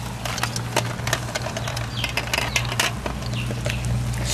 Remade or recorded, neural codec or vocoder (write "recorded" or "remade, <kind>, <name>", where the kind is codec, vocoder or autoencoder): recorded